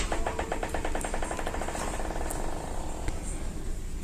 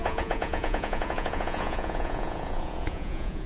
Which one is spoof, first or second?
second